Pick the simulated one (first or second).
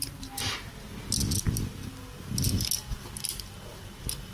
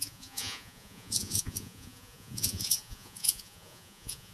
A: second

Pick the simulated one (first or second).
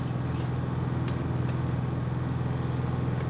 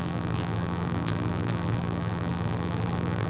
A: second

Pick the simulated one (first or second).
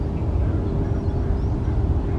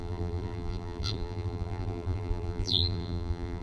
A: second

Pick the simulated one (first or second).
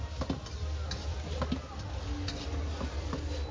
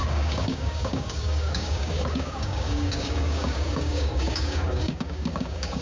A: second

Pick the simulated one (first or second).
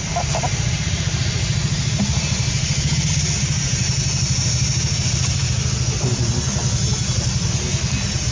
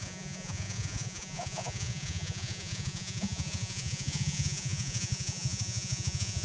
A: second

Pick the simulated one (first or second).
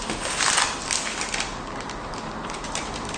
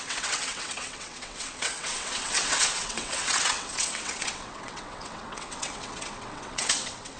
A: second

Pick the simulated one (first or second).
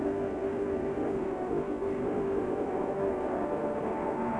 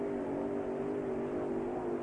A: first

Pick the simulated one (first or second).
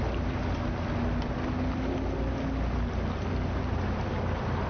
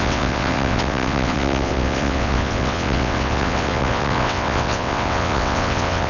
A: second